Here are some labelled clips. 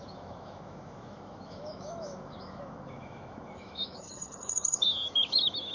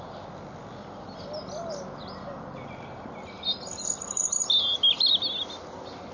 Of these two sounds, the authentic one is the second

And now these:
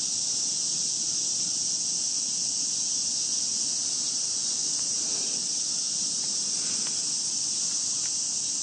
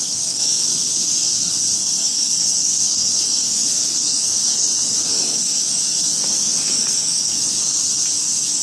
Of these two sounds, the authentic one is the first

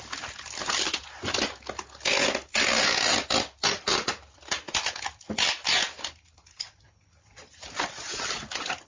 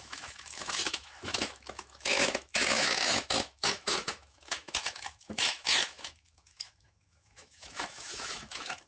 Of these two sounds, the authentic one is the first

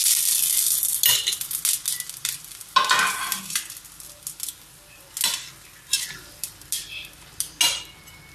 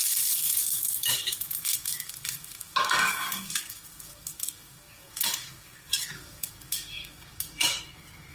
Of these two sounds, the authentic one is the first